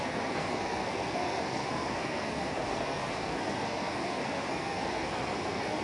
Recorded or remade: remade